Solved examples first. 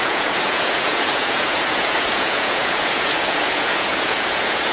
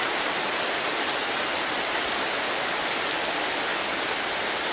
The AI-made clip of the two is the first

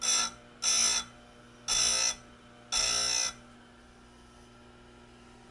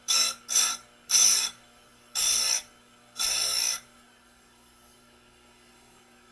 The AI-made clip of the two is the second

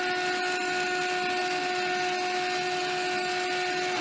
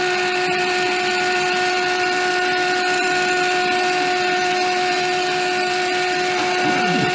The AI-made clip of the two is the second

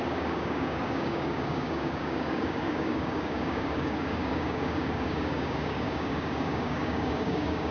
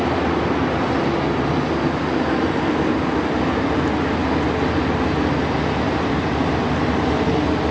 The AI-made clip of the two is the first